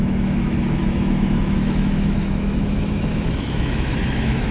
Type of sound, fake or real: fake